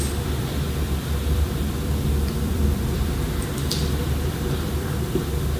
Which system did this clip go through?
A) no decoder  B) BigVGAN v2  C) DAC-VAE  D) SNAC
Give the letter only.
B